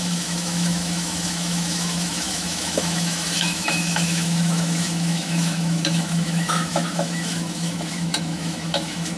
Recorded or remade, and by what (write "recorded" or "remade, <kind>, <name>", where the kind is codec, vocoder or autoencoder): remade, autoencoder, DAC-VAE